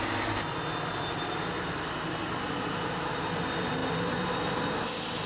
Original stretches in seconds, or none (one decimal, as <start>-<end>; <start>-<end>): 0.0-5.3

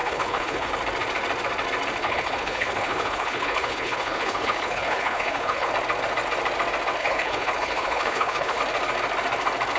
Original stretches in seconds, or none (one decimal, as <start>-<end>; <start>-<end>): 0.7-2.0; 5.7-7.0; 8.6-9.8

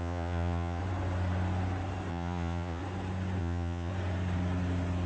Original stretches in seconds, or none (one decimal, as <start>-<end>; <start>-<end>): 0.8-2.1; 2.8-3.4; 3.9-5.1

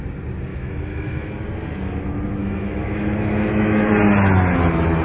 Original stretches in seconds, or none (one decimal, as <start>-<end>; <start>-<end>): 0.0-0.5; 1.3-2.4; 3.9-5.0

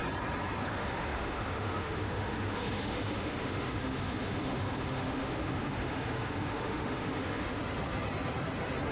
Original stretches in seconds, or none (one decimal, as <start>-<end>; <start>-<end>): 0.0-0.6; 7.6-8.9

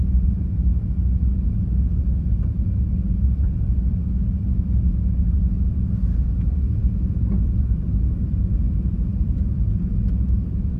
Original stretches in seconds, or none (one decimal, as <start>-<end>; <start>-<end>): 0.7-2.0; 4.0-5.6; 6.8-7.4